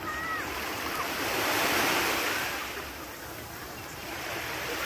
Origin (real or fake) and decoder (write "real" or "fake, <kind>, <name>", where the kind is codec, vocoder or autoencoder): fake, vocoder, BigVGAN v2